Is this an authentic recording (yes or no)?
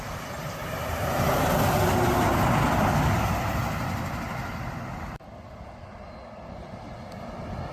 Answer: yes